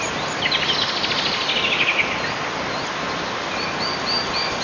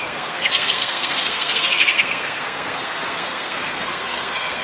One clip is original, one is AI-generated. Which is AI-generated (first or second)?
second